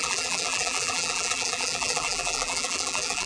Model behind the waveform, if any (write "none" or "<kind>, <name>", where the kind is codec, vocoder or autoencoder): vocoder, BigVGAN v2